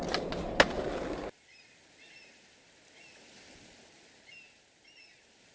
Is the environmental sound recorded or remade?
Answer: recorded